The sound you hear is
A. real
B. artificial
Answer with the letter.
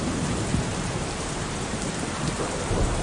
B